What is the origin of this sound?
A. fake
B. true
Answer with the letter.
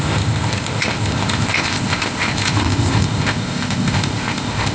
A